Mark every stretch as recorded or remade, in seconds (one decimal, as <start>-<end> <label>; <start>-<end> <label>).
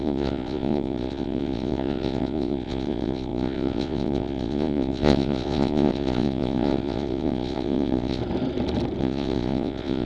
0.0-8.2 remade; 8.2-9.0 recorded; 9.0-10.1 remade